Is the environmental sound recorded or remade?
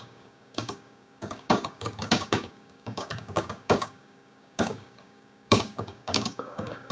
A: remade